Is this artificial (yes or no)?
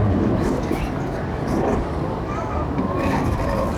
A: yes